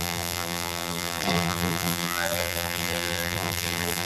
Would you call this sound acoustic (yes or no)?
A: no